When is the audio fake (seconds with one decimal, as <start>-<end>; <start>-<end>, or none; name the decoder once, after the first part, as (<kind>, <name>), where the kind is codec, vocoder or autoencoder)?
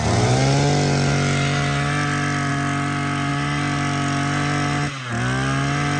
none